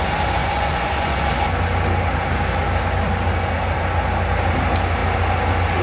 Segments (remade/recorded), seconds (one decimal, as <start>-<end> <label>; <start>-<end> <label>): 0.0-0.4 recorded; 0.4-1.3 remade; 1.3-5.8 recorded